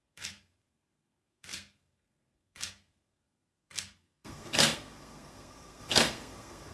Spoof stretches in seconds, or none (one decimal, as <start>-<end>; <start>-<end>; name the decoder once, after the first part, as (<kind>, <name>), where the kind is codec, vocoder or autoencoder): 0.0-6.7 (codec, SNAC)